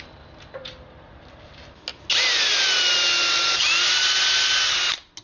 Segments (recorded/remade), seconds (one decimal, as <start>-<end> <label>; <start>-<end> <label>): 0.0-5.2 recorded

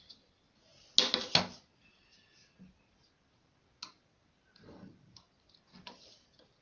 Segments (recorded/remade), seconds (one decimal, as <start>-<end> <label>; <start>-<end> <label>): 0.0-6.6 recorded

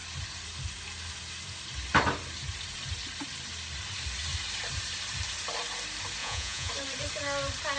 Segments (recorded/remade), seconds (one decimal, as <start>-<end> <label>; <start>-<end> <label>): 0.0-6.2 recorded; 6.2-6.7 remade; 6.7-7.8 recorded

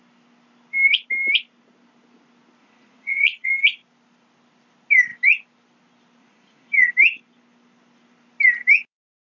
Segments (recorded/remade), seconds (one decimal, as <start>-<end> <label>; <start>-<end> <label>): 0.0-2.6 recorded; 2.6-3.5 remade; 3.5-6.2 recorded; 6.2-6.9 remade; 6.9-9.4 recorded